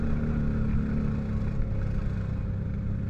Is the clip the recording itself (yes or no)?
yes